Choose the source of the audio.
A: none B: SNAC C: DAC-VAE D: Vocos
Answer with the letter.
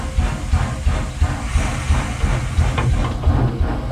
A